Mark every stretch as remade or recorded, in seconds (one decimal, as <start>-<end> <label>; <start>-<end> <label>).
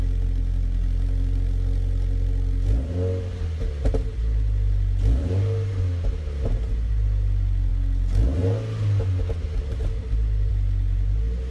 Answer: 0.0-11.5 recorded